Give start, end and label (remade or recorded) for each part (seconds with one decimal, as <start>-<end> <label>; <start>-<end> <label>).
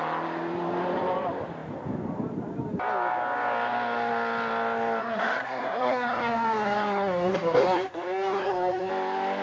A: 0.0-5.0 recorded; 5.0-8.9 remade; 8.9-9.4 recorded